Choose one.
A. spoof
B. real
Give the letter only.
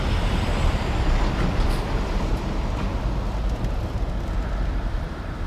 A